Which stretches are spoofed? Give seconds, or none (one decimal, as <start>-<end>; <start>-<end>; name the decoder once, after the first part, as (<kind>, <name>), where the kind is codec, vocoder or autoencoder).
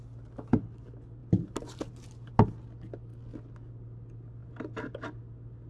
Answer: 1.2-2.3 (vocoder, BigVGAN v2); 4.4-4.9